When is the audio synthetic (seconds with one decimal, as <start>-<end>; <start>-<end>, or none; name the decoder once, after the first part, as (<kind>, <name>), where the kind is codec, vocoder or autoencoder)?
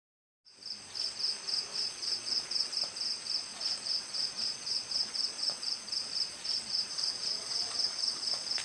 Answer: 1.7-2.7 (vocoder, Vocos); 3.5-8.6